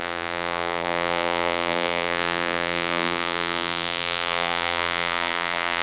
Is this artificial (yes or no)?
yes